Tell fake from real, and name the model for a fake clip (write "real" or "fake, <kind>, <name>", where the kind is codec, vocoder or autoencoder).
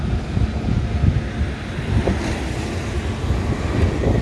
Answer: real